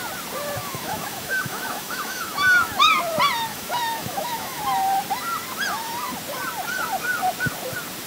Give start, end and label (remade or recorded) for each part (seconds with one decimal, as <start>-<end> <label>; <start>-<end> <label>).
0.0-0.6 recorded; 0.6-2.9 remade; 2.9-3.5 recorded; 3.5-4.6 remade; 4.6-8.1 recorded